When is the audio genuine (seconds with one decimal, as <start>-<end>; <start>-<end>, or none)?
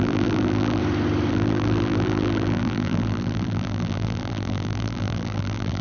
0.8-1.3